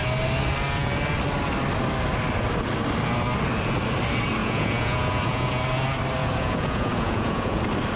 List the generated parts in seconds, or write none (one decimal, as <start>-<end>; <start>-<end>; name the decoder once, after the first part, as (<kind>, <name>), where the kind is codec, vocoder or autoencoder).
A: 4.4-5.6 (vocoder, Vocos); 6.2-7.6